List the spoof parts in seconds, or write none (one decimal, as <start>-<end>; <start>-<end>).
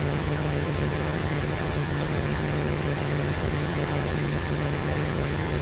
0.0-5.6